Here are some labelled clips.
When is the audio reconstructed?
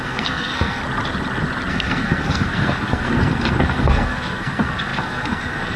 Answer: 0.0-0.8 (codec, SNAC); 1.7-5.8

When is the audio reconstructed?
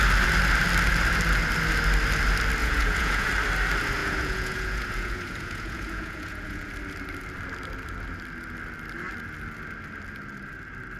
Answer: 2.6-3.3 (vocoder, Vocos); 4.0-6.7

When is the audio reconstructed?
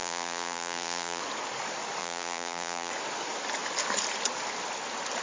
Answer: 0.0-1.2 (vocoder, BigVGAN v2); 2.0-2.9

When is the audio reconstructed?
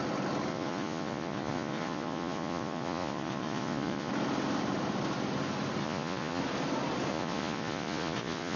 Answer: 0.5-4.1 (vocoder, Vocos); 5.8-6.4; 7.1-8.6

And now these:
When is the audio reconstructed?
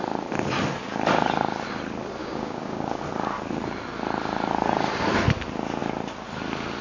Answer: 2.2-3.0 (codec, DAC)